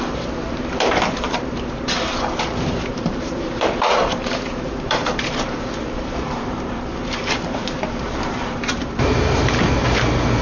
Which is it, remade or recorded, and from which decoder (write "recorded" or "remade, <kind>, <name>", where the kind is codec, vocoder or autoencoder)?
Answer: remade, vocoder, BigVGAN v2